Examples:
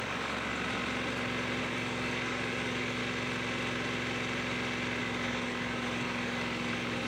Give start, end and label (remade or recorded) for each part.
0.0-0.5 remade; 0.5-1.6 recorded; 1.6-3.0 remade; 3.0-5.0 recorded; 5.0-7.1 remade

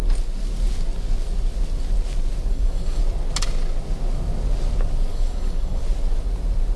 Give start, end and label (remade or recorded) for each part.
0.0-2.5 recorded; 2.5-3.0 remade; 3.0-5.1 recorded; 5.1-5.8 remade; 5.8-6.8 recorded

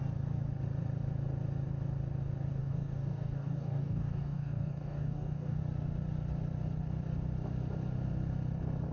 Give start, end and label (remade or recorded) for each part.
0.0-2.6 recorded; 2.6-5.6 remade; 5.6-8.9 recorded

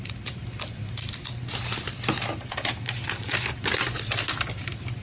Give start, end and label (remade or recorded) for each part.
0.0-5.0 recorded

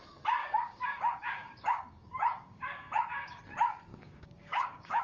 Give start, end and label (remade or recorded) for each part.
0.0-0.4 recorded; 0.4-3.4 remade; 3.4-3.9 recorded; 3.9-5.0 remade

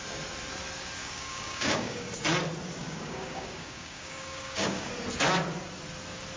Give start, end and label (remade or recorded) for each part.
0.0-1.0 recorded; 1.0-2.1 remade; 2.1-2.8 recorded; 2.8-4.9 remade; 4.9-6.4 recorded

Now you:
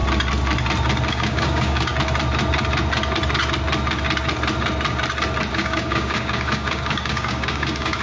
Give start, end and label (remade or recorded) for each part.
0.0-1.1 recorded; 1.1-1.9 remade; 1.9-5.5 recorded; 5.5-8.0 remade